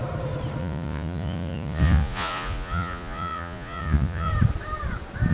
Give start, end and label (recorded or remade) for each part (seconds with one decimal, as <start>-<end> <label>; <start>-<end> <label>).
0.0-0.6 recorded; 0.6-4.3 remade; 4.3-5.3 recorded